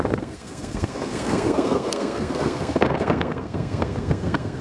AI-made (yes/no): yes